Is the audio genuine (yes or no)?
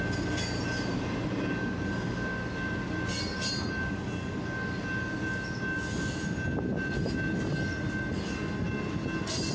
yes